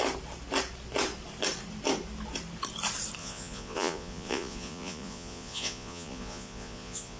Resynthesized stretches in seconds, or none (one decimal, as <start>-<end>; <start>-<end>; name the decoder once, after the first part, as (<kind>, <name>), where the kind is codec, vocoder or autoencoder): 3.2-7.2 (vocoder, Vocos)